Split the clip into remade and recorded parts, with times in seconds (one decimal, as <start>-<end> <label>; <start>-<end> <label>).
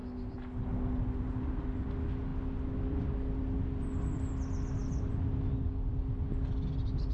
0.0-7.1 recorded